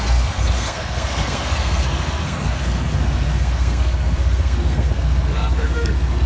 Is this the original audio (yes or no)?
no